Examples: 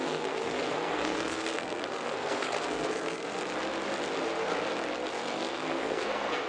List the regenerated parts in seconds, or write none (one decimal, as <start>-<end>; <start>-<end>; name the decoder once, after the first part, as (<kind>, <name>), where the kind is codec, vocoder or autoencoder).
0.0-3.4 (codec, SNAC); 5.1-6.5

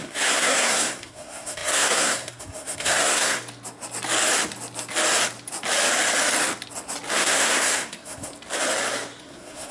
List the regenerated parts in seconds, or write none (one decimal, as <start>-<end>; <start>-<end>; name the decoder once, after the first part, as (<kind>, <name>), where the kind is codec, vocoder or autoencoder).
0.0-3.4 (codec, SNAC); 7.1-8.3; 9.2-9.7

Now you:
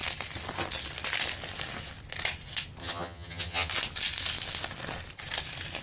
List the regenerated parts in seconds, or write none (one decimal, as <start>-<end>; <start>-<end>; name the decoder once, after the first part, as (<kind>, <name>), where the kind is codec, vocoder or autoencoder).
2.8-3.7 (vocoder, HiFi-GAN)